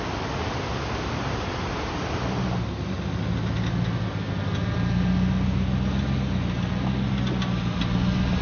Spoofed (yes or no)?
no